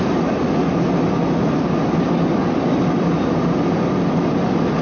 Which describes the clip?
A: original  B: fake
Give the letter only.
A